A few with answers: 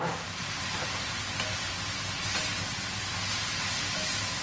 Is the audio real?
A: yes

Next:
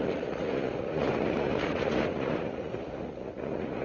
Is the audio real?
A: no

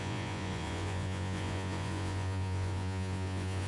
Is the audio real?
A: no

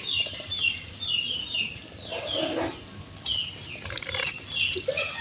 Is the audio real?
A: yes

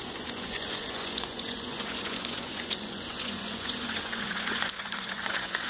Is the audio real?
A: no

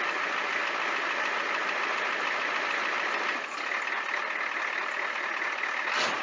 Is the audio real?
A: yes